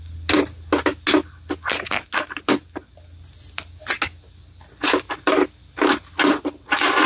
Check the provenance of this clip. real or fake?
real